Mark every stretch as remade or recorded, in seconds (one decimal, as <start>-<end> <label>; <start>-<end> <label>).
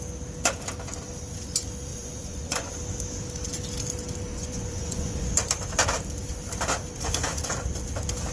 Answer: 0.0-1.9 recorded; 1.9-2.7 remade; 2.7-4.3 recorded; 4.3-5.3 remade; 5.3-8.3 recorded